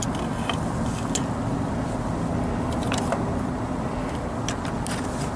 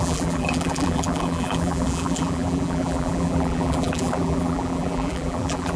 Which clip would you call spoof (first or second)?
second